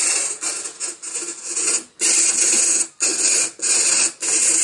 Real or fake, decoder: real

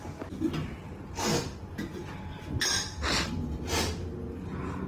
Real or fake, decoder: real